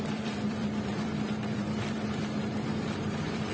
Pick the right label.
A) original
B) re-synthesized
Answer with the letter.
B